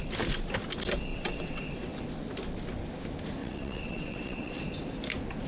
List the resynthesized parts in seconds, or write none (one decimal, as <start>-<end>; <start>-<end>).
1.1-1.6; 3.4-4.6